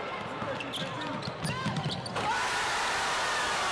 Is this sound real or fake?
real